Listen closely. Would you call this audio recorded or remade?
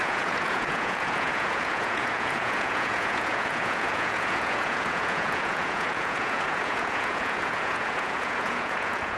remade